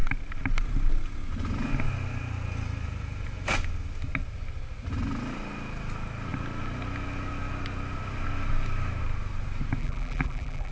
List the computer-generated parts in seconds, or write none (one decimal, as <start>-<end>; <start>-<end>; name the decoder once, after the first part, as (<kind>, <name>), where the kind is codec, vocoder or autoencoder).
9.8-10.7 (vocoder, BigVGAN v2)